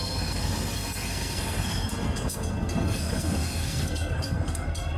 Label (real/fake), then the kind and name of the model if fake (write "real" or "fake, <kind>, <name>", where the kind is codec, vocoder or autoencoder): fake, codec, SNAC